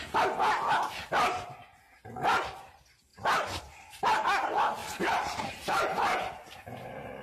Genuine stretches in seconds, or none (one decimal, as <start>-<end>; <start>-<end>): 0.0-4.8; 6.3-7.2